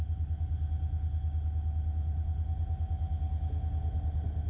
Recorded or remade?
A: recorded